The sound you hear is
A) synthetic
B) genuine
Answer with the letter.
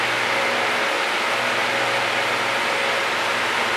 B